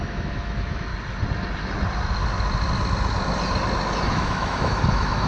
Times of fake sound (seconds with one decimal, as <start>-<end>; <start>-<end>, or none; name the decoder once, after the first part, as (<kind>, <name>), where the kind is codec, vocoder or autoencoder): 0.0-0.9 (autoencoder, DAC-VAE); 4.1-5.3